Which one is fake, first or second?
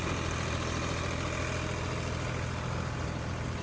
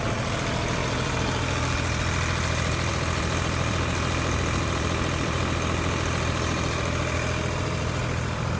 second